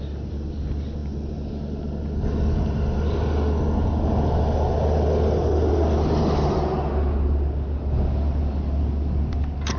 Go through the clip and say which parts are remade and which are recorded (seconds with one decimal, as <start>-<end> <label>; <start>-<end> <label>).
0.0-9.8 recorded

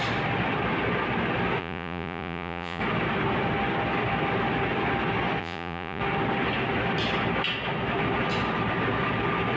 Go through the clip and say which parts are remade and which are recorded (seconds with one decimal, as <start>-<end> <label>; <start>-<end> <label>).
0.0-1.6 recorded; 1.6-2.8 remade; 2.8-5.4 recorded; 5.4-6.0 remade; 6.0-9.6 recorded

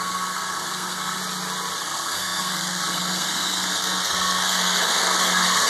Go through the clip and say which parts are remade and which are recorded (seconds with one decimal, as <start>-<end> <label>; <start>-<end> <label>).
0.0-1.2 remade; 1.2-1.8 recorded; 1.8-5.7 remade